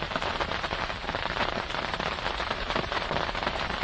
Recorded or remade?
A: remade